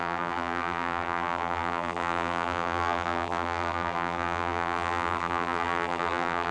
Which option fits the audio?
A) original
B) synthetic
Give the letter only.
B